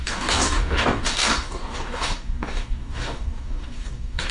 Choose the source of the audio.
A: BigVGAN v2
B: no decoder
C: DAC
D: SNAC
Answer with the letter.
C